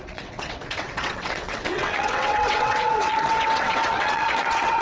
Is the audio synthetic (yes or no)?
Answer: yes